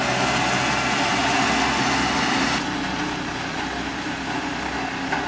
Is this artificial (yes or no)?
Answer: no